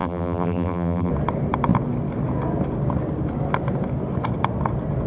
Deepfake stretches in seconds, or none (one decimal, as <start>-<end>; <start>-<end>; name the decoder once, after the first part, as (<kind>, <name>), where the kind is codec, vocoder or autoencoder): 0.0-1.1 (vocoder, BigVGAN v2)